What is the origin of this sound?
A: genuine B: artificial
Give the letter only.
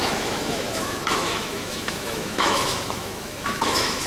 B